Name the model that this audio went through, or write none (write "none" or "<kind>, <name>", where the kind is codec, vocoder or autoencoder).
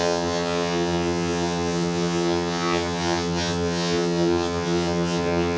vocoder, HiFi-GAN